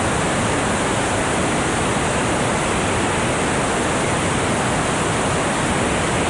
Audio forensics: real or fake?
real